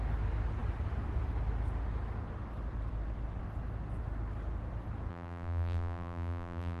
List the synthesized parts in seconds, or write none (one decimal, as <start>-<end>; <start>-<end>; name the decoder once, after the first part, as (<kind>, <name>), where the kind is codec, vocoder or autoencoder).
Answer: 5.1-6.8 (vocoder, BigVGAN v2)